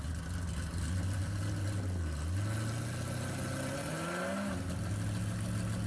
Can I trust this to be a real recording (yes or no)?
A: yes